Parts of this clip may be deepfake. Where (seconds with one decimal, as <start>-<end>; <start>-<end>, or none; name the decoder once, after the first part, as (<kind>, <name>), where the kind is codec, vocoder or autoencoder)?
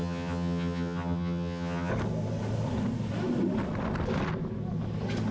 0.0-1.9 (vocoder, HiFi-GAN)